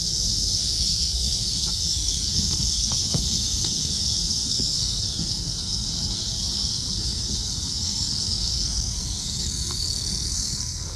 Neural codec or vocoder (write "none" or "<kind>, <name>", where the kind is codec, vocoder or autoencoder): codec, SNAC